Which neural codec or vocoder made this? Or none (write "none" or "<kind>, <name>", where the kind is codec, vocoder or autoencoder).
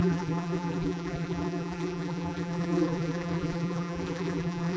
vocoder, BigVGAN v2